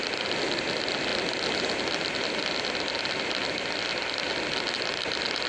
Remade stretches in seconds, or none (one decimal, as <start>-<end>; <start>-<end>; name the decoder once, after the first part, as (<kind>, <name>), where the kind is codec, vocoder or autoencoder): none